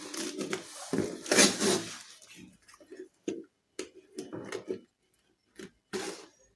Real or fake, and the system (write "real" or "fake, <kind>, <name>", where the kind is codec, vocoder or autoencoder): real